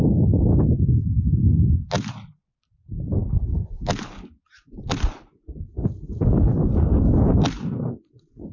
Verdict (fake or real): real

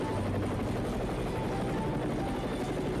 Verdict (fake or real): real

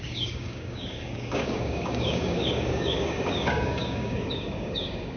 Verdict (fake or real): fake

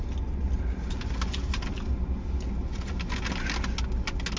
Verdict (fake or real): real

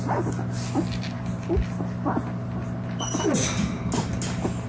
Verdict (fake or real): real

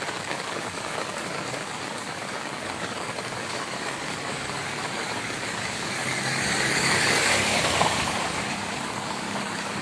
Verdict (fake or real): fake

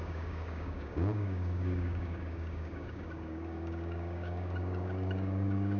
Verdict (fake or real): fake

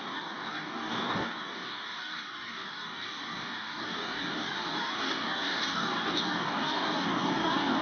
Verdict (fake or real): fake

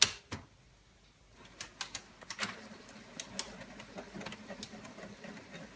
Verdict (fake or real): real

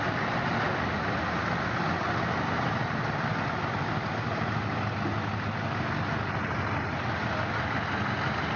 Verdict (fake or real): real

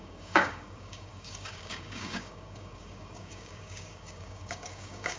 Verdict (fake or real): fake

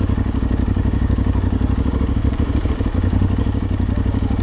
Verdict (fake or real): fake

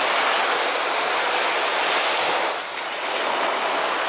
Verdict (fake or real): real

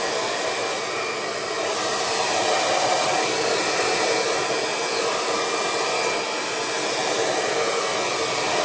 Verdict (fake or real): real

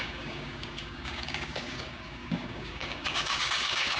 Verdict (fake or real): fake